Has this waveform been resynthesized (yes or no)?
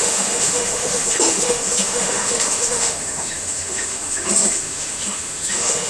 yes